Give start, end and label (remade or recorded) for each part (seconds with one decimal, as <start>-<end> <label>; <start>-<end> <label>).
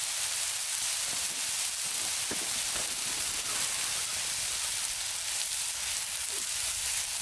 0.0-7.2 recorded